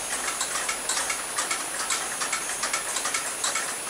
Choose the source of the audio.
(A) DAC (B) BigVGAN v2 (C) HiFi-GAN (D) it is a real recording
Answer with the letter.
D